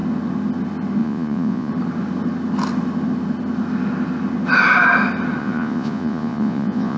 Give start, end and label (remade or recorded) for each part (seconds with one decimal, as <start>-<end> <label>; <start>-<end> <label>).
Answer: 0.0-1.0 recorded; 1.0-1.7 remade; 1.7-5.4 recorded; 5.4-7.0 remade